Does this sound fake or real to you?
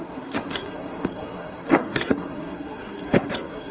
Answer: fake